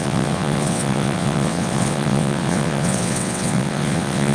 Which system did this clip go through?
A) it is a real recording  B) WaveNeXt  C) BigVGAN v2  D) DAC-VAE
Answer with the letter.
B